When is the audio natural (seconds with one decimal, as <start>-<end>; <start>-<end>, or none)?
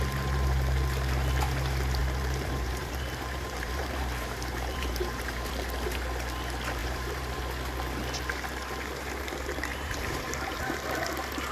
0.0-2.0; 5.5-6.8; 7.4-9.7; 10.6-11.5